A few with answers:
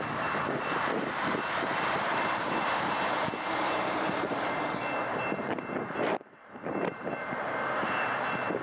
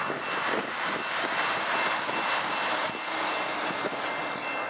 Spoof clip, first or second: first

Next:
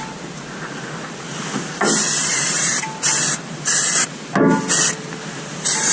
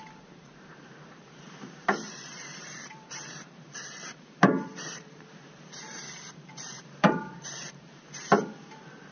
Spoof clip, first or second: second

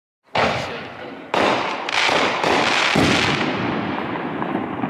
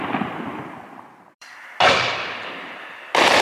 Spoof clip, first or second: second